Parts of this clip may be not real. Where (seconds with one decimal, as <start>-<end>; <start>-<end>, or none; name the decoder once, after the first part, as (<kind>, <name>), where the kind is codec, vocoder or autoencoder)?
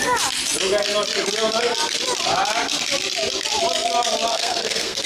4.3-5.1 (codec, SNAC)